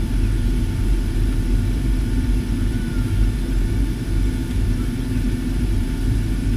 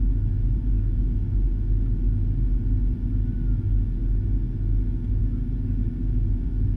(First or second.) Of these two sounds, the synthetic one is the first